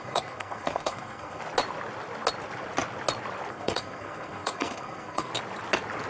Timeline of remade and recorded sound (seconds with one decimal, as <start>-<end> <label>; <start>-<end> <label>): 0.0-1.4 remade; 1.4-3.5 recorded; 3.5-5.3 remade; 5.3-6.1 recorded